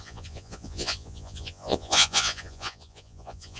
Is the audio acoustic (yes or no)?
no